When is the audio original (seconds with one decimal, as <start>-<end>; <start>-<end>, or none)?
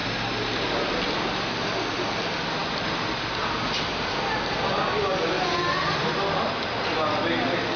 0.0-7.8